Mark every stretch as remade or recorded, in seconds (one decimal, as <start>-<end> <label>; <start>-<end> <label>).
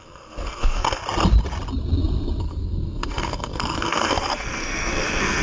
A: 0.0-1.0 remade; 1.0-2.4 recorded; 2.4-5.4 remade